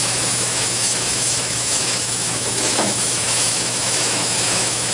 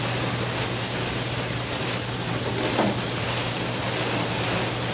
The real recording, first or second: second